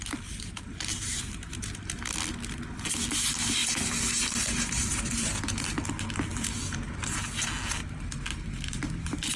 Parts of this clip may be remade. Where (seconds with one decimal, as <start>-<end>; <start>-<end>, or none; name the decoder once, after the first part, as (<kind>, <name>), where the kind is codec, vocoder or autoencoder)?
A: 6.3-7.4 (vocoder, BigVGAN v2)